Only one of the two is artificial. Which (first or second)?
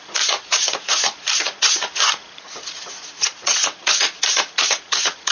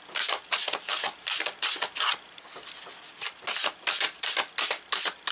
first